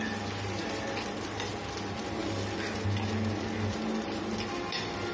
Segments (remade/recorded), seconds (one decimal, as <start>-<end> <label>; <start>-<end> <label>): 0.0-5.1 recorded